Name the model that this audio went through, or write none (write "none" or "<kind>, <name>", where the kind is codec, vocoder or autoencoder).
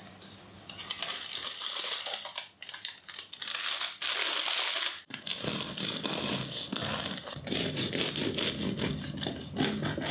none